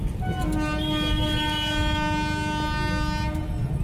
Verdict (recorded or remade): recorded